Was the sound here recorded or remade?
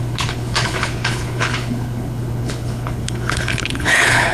remade